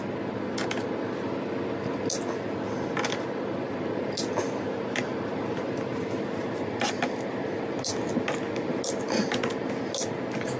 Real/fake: real